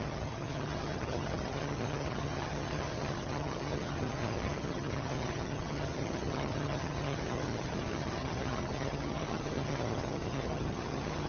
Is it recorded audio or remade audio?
remade